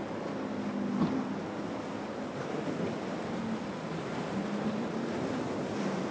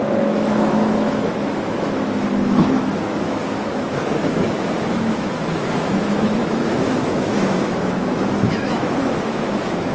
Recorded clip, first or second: first